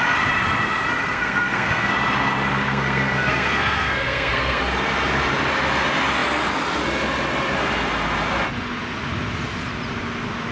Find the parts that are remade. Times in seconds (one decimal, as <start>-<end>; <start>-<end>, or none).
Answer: 1.0-1.9; 2.5-4.6